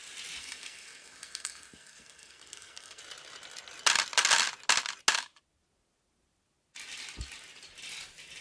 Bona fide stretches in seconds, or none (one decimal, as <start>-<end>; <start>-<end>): 0.0-0.4; 3.0-8.4